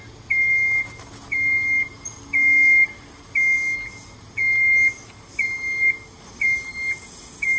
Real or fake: real